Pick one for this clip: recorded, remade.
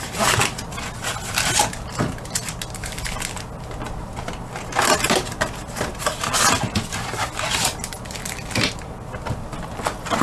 recorded